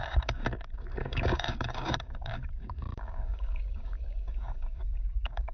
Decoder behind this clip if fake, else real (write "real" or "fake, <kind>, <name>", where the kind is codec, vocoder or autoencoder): fake, codec, DAC